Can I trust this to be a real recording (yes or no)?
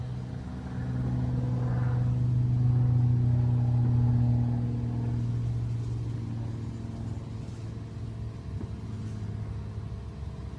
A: yes